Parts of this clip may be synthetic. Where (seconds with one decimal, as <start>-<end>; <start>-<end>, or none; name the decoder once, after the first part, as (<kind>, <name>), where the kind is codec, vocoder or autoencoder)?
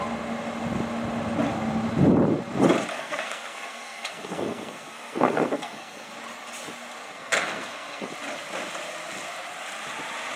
2.9-6.1 (codec, SNAC); 7.0-8.1